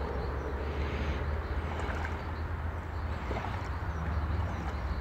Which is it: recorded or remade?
recorded